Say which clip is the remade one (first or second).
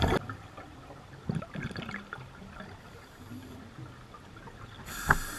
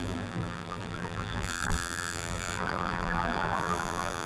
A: second